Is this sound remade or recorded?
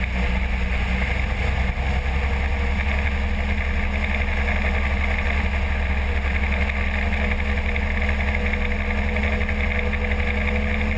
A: recorded